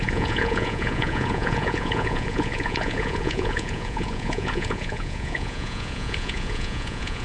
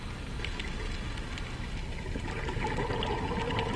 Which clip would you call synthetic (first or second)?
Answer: first